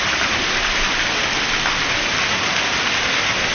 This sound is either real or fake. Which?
real